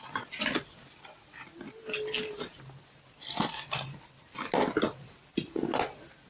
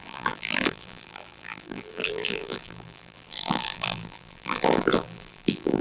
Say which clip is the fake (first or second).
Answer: second